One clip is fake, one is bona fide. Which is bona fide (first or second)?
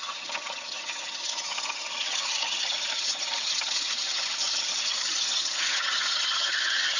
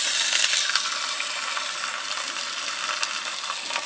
second